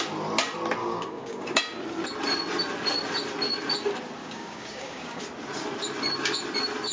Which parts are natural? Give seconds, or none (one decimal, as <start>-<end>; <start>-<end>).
0.0-0.8; 1.6-4.2; 5.2-6.9